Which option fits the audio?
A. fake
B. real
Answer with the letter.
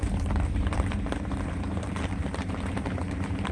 A